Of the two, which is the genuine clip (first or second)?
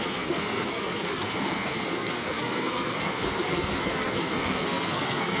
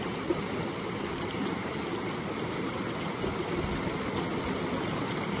second